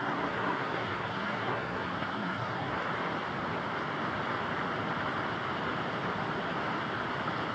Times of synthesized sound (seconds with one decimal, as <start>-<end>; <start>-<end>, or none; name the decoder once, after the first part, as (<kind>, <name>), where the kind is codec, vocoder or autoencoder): 0.0-2.9 (codec, SNAC)